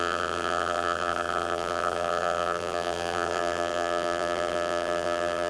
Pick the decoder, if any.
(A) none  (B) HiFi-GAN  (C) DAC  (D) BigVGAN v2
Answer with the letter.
D